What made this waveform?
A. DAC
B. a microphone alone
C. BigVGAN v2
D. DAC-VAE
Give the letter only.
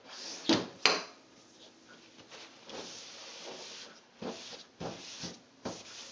B